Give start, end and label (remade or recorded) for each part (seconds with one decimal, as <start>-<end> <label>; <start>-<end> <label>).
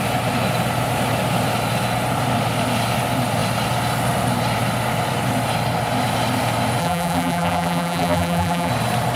0.0-6.8 recorded; 6.8-8.7 remade; 8.7-9.2 recorded